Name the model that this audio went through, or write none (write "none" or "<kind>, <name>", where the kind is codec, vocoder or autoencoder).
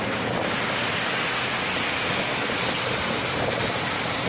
none